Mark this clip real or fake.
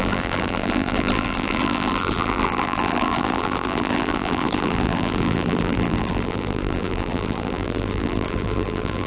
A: fake